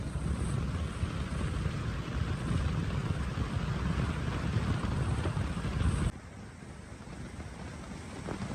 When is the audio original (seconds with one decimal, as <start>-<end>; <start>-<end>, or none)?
0.0-8.5